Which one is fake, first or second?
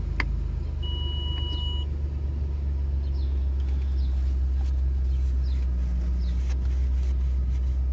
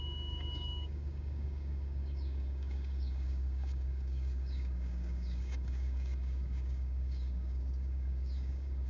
second